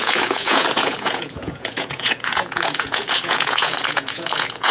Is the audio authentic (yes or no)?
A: no